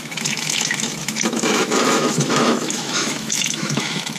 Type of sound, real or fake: fake